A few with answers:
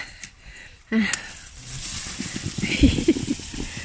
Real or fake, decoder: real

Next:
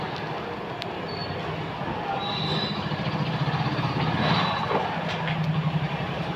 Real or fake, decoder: real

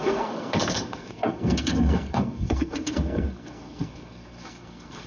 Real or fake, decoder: fake, codec, SNAC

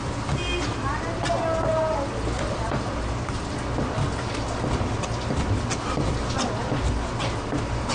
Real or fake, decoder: real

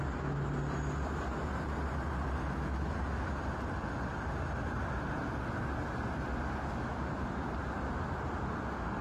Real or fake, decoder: real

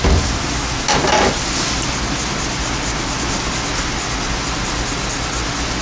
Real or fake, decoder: real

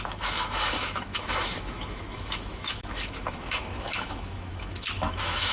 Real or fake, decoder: fake, autoencoder, DAC-VAE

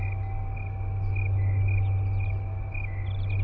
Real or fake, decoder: real